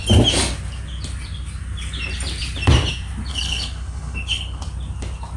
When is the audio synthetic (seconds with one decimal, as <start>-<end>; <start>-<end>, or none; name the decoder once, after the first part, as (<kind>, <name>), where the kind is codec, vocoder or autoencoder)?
3.3-4.6 (codec, HILCodec)